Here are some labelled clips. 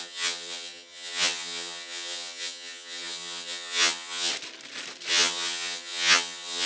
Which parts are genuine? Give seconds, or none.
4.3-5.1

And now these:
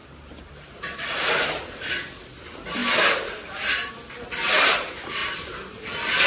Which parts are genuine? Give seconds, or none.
1.9-2.8; 3.9-5.2

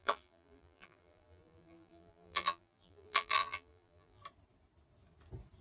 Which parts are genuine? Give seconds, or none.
4.2-5.6

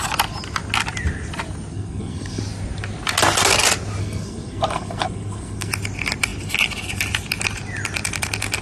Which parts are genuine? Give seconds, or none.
0.0-1.7; 2.4-4.0; 5.7-8.6

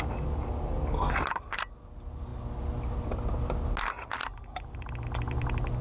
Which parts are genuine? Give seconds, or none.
0.0-4.2; 4.9-5.8